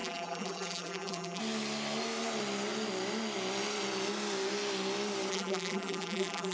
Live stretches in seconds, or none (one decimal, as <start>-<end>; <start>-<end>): 1.4-5.3